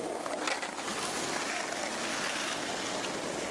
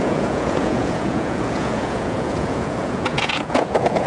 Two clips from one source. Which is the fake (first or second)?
second